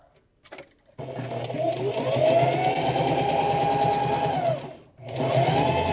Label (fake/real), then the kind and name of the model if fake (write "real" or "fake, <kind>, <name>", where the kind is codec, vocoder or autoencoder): real